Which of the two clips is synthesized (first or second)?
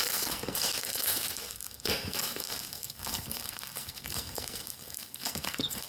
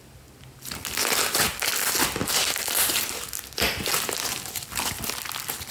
first